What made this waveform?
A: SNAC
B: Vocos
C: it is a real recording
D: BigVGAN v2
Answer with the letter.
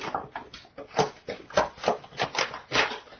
C